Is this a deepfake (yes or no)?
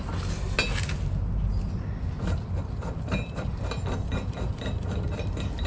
no